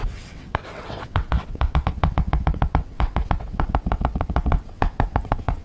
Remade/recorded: remade